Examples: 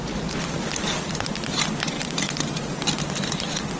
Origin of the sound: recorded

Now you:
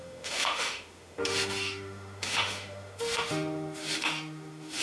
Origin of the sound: remade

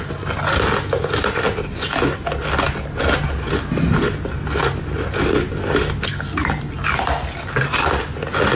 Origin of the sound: recorded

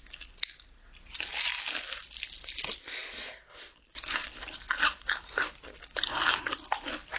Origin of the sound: recorded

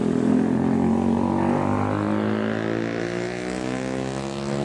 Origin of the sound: recorded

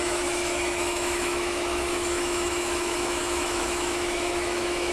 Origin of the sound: remade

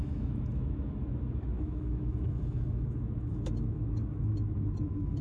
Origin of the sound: remade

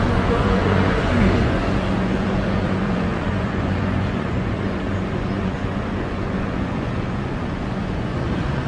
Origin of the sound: remade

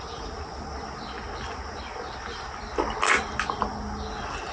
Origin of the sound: recorded